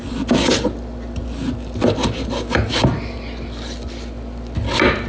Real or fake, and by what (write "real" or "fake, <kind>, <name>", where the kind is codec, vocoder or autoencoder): real